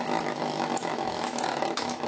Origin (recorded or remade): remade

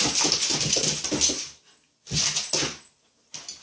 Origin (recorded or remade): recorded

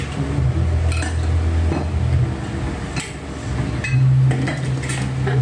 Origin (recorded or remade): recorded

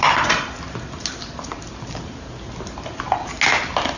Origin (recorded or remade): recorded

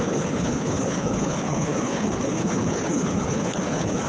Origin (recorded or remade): remade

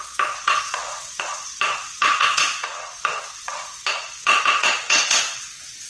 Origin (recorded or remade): remade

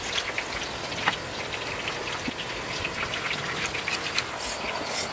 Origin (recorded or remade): recorded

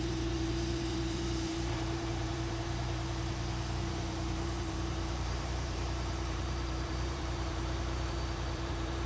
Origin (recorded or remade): remade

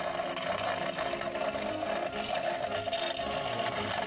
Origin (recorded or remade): recorded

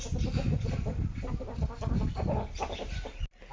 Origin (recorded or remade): recorded